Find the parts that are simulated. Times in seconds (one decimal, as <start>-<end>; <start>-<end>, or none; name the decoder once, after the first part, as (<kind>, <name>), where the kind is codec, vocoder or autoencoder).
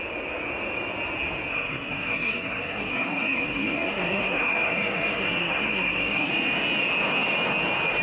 1.5-6.3 (codec, SNAC)